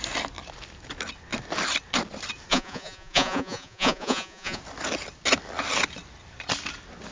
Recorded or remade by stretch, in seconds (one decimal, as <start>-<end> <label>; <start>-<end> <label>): 0.0-2.5 recorded; 2.5-4.6 remade; 4.6-7.1 recorded